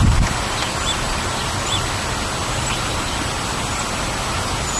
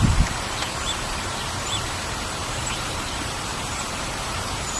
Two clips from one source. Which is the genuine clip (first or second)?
first